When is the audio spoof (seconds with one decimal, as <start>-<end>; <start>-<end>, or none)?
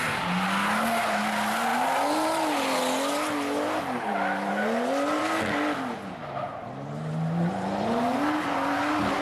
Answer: none